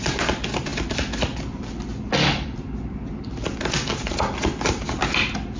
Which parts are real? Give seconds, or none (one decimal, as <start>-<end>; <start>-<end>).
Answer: 0.0-5.6